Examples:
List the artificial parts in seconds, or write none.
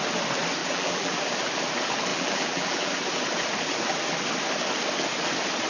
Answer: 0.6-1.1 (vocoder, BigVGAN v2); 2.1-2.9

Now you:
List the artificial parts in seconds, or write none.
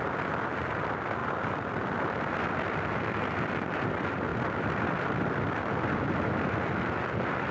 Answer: 1.2-3.8 (vocoder, BigVGAN v2); 4.3-5.6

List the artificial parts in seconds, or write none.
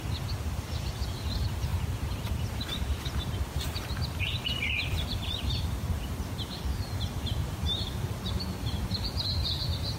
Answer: 1.7-5.6 (vocoder, BigVGAN v2); 7.4-9.6